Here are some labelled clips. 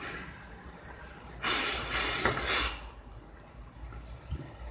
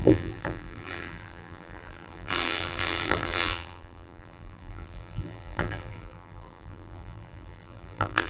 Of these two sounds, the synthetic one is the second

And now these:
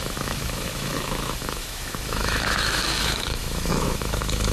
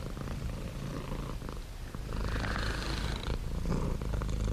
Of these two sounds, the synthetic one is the first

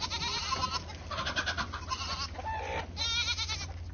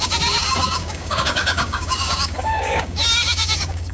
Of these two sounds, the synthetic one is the second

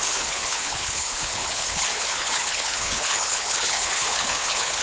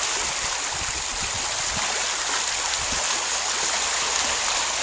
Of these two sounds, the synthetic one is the first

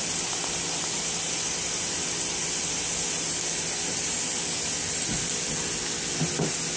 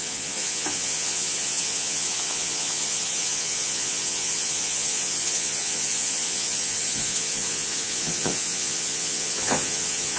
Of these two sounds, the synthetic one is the second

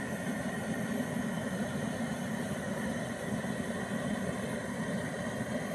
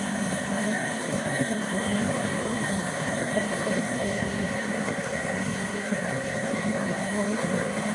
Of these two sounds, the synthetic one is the second